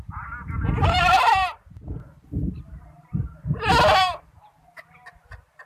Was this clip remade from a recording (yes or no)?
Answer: yes